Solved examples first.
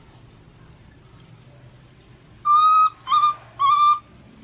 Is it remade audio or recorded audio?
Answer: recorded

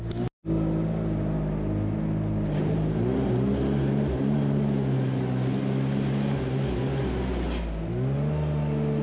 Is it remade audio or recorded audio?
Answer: recorded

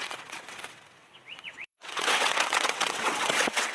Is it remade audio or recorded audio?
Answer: remade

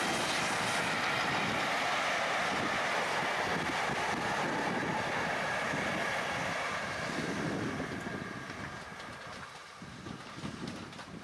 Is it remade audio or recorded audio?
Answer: recorded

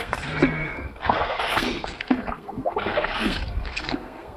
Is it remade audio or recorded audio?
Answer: remade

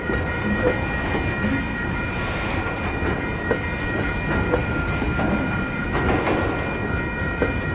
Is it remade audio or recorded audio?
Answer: recorded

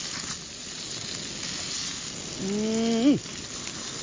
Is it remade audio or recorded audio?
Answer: recorded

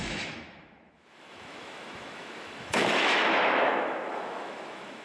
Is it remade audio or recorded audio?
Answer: remade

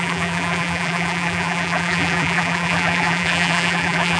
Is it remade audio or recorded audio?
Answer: remade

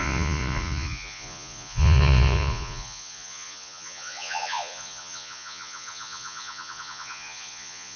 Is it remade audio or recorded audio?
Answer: remade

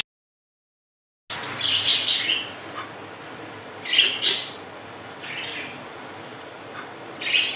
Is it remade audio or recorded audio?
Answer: recorded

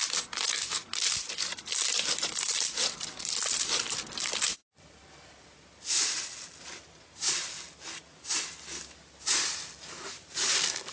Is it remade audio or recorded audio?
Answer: recorded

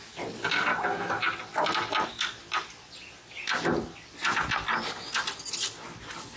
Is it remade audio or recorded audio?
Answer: recorded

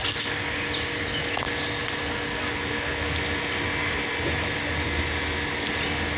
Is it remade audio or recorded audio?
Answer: recorded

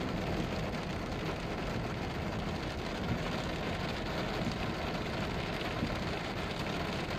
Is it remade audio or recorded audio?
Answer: recorded